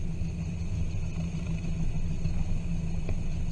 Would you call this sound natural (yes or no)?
yes